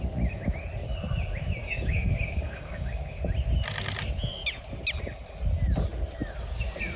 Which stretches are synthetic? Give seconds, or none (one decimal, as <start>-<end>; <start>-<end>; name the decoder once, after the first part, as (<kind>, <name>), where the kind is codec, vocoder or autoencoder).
1.6-3.2 (codec, DAC)